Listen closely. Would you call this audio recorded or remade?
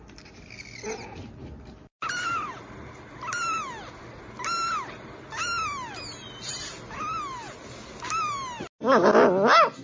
recorded